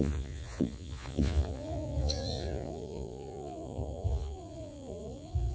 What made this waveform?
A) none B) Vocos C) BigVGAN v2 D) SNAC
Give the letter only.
B